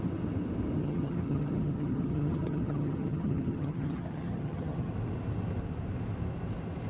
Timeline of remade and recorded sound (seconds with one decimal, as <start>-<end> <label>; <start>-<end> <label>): 0.0-0.8 recorded; 0.8-4.9 remade; 4.9-6.9 recorded